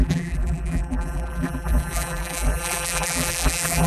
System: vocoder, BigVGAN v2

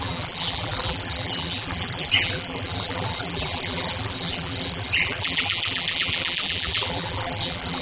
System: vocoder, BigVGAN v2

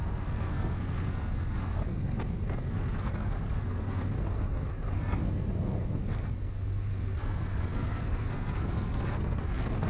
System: codec, SNAC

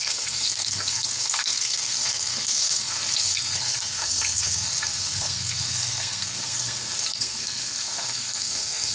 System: codec, SNAC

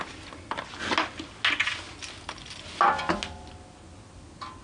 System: none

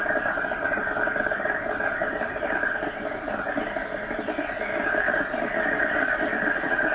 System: none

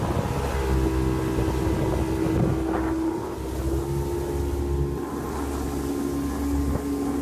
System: none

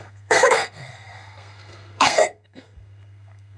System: codec, SNAC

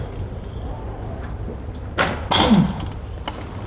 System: none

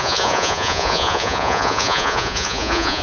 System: vocoder, Vocos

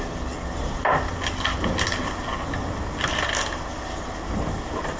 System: none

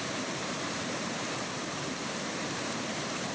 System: vocoder, BigVGAN v2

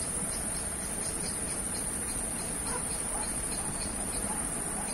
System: vocoder, BigVGAN v2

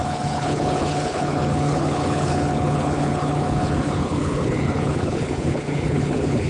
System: codec, HILCodec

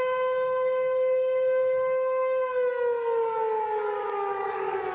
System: codec, DAC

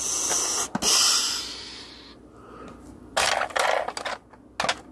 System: none